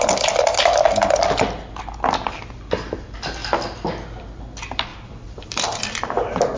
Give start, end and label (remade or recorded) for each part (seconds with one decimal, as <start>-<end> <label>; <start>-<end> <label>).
0.0-4.9 recorded; 4.9-5.8 remade; 5.8-6.6 recorded